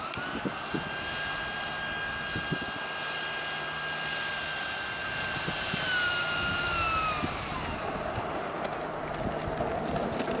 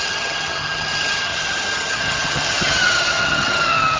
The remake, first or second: second